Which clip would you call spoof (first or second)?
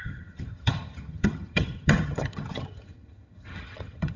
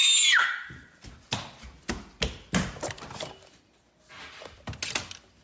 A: first